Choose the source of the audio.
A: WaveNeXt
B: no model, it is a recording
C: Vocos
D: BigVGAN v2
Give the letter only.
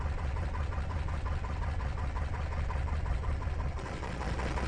C